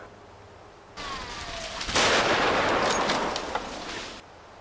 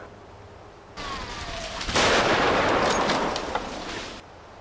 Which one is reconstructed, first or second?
second